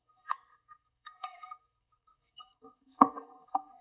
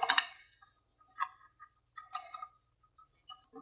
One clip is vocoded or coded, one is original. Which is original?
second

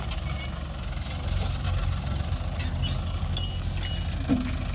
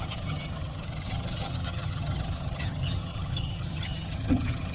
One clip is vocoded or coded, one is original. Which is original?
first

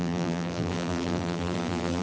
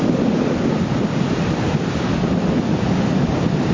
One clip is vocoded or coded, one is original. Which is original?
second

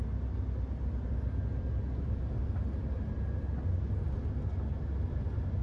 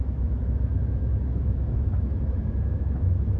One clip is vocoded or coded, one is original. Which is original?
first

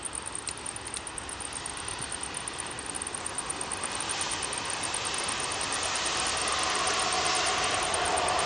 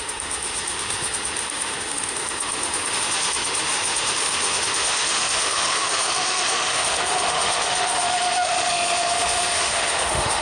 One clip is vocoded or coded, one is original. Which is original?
first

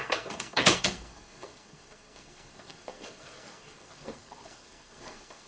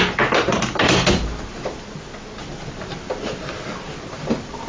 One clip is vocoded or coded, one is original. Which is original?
second